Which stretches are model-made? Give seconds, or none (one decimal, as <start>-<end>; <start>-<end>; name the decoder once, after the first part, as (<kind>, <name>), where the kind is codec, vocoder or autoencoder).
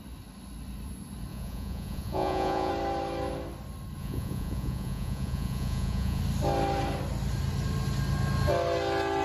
1.3-2.7 (vocoder, Vocos); 4.0-6.2